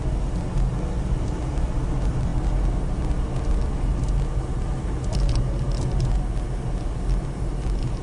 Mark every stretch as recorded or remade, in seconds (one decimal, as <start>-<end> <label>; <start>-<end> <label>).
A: 0.0-8.0 recorded